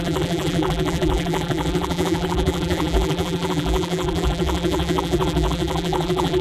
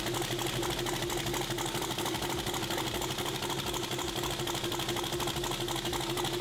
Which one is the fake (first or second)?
first